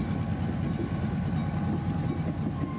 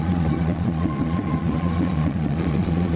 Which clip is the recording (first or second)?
first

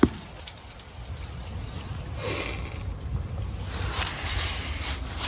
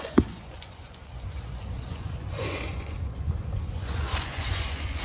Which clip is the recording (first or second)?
first